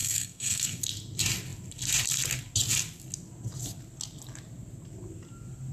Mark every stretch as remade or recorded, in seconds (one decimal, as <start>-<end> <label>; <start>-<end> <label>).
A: 0.0-0.8 remade; 0.8-5.7 recorded